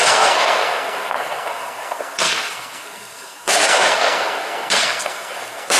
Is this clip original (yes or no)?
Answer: no